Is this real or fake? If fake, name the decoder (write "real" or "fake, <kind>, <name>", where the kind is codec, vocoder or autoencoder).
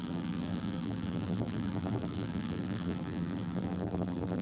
fake, vocoder, BigVGAN v2